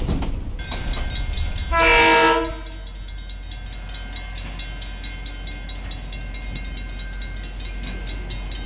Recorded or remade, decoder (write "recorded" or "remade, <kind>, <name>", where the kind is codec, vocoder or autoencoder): recorded